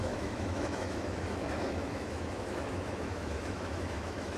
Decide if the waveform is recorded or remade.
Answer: remade